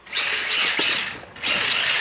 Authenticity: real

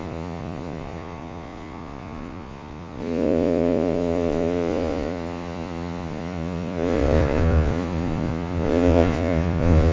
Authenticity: fake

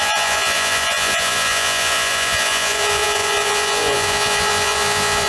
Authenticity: fake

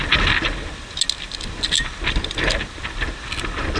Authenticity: real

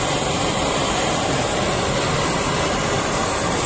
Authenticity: real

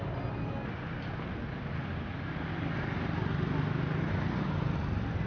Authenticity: real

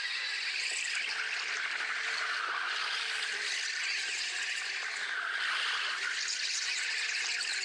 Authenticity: real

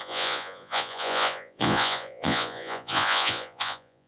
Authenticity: fake